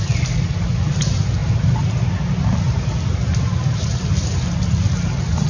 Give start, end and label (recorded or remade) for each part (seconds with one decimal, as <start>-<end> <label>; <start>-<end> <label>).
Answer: 0.0-5.5 recorded